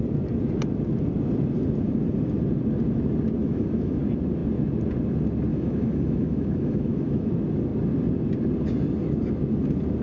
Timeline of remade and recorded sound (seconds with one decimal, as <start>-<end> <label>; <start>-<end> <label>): 0.0-3.4 recorded; 3.4-4.0 remade; 4.0-5.5 recorded; 5.5-7.3 remade; 7.3-10.0 recorded